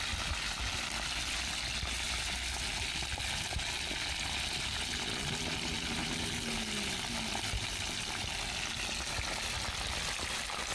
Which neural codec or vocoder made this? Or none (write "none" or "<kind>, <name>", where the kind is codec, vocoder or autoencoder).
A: none